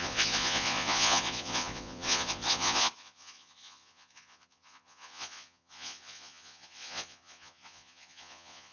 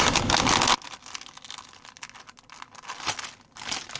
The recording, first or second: second